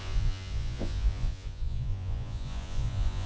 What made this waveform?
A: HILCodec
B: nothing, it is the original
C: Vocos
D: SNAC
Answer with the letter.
C